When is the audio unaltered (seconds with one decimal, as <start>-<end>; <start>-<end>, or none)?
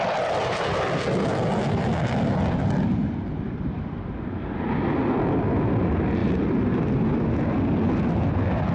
0.0-3.0; 4.1-6.2; 6.8-8.7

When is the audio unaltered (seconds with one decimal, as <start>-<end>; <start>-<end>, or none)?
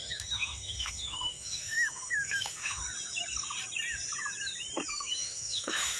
2.8-4.9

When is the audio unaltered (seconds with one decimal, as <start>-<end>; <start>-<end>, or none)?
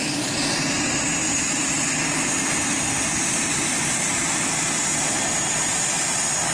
0.0-6.5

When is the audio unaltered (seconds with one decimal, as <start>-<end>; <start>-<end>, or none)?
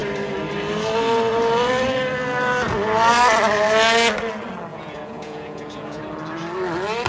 0.0-4.7; 6.0-7.1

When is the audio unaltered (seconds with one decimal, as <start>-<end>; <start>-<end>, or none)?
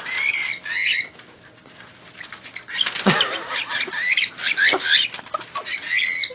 0.0-6.3